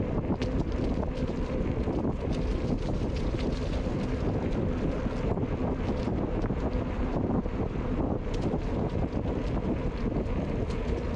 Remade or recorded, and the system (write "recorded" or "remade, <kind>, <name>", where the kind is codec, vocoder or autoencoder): remade, vocoder, BigVGAN v2